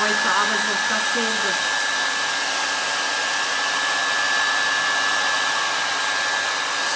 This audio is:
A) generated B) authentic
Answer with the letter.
B